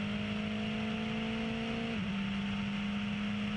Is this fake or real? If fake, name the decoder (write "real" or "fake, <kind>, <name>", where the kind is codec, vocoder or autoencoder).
real